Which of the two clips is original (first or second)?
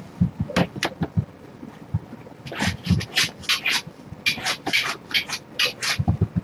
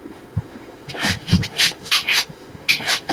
first